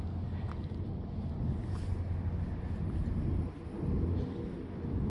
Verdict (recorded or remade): recorded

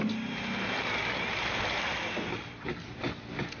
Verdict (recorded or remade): recorded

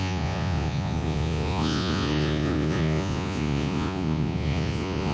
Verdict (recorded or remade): remade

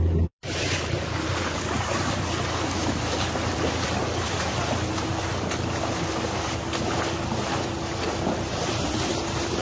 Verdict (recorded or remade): recorded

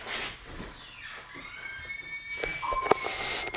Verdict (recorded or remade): recorded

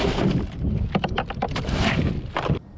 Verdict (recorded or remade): recorded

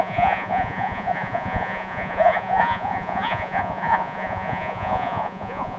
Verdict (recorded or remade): remade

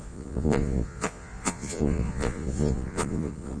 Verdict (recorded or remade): remade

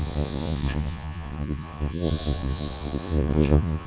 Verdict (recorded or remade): remade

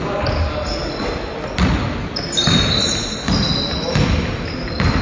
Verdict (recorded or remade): recorded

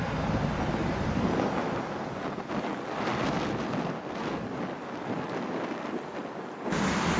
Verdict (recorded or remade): recorded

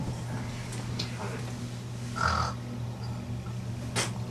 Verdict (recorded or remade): recorded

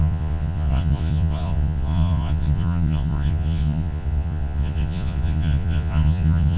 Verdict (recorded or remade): remade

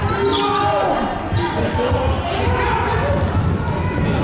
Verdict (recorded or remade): recorded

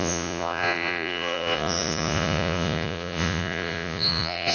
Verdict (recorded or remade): remade